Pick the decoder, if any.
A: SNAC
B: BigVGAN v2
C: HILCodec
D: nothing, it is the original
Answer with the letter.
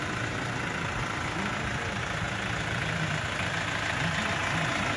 D